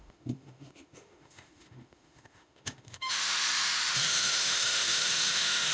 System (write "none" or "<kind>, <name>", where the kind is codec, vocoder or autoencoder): autoencoder, DAC-VAE